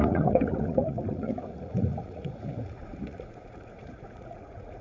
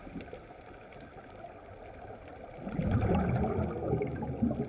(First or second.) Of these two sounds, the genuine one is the second